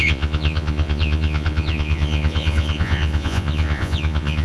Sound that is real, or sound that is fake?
fake